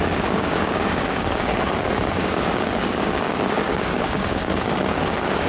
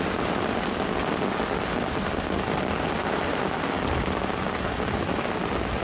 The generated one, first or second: first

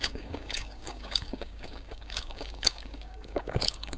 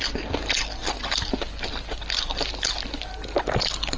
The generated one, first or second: first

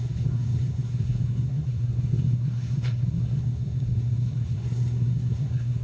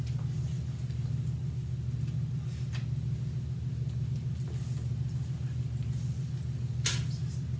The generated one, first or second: first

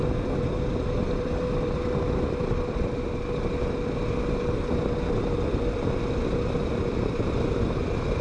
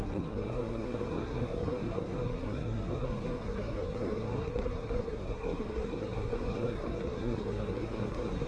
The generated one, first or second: second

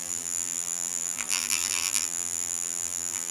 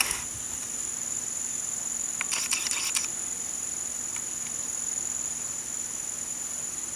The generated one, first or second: first